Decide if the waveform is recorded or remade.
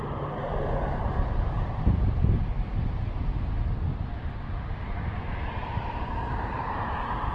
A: remade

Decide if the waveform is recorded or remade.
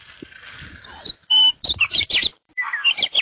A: remade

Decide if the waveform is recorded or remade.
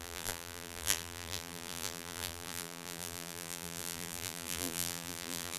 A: remade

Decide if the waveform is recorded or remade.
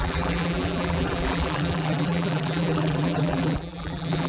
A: remade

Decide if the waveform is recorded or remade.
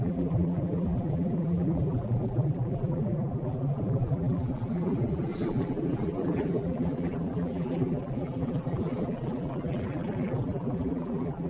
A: remade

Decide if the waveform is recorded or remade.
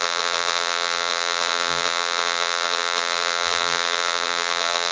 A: remade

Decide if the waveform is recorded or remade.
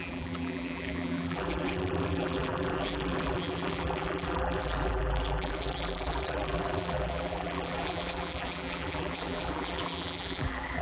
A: remade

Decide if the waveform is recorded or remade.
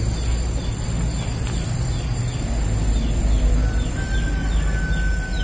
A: recorded